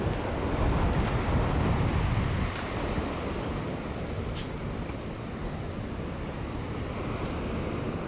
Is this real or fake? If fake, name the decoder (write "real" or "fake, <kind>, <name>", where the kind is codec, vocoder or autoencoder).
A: real